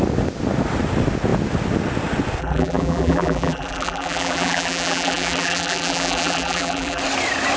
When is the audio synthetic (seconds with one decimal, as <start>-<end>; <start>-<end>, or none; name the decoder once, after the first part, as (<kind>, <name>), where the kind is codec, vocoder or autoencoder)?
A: 2.4-7.0 (vocoder, BigVGAN v2)

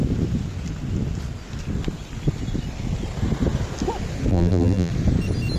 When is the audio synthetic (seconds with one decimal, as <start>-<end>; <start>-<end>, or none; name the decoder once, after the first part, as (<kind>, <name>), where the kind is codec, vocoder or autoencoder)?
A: 4.3-4.9 (vocoder, BigVGAN v2)

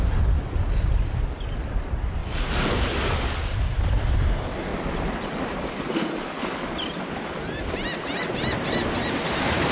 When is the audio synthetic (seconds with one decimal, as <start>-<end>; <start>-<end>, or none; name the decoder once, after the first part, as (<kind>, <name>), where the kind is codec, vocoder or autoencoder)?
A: none